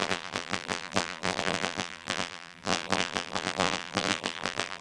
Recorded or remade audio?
remade